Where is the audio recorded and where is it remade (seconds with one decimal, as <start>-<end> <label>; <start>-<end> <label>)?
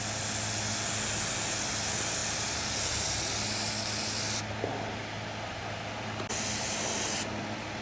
0.0-7.8 recorded